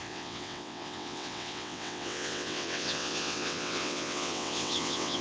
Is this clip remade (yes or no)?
yes